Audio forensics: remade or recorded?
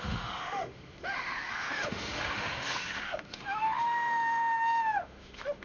remade